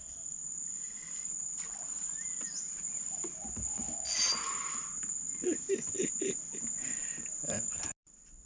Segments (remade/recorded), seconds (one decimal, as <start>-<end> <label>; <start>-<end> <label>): 0.0-8.5 recorded